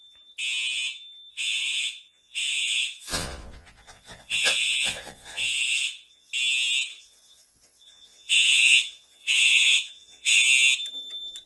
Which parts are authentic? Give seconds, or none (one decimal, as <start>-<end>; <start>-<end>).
0.0-1.3; 6.3-6.9; 10.4-11.5